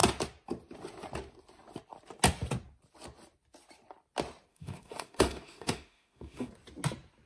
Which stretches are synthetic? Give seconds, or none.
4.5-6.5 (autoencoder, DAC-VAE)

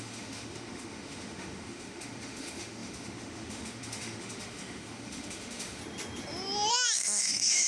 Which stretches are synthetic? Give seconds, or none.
0.0-5.8 (autoencoder, DAC-VAE); 6.7-7.7

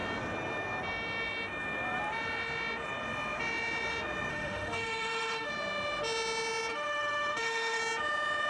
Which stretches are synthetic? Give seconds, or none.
4.3-5.5 (autoencoder, DAC-VAE); 6.7-7.8

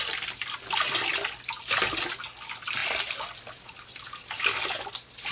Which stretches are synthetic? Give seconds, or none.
none

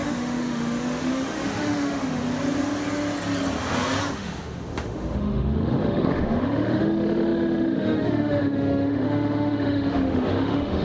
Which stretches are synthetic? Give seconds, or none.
0.0-2.2 (autoencoder, DAC-VAE); 4.0-10.8

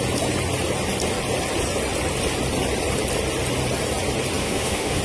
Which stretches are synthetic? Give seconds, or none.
4.4-5.0 (autoencoder, DAC-VAE)